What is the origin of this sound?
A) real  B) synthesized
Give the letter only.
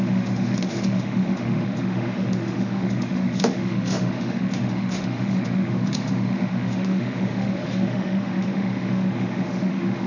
B